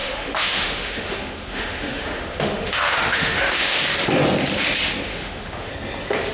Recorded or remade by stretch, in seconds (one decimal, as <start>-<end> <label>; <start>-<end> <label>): 0.0-3.8 remade; 3.8-5.1 recorded; 5.1-5.7 remade; 5.7-6.3 recorded